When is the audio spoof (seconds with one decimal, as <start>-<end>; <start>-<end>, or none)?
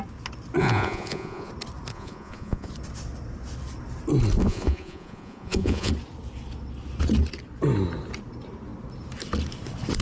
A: 0.6-1.5; 1.9-2.7; 4.4-5.9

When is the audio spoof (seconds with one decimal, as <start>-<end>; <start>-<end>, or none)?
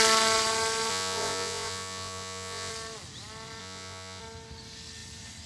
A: 0.9-2.7; 3.6-4.2